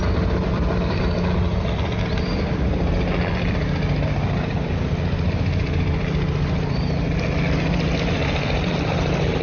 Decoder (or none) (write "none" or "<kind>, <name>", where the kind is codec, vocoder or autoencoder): vocoder, BigVGAN v2